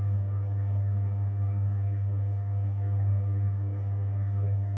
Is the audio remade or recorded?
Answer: remade